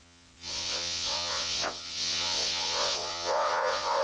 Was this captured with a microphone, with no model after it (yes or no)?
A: no